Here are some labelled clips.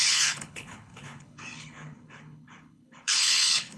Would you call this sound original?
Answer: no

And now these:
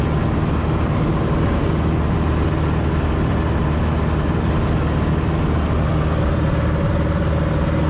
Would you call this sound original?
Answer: yes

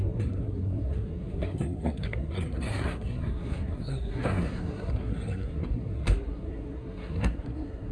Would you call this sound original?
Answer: no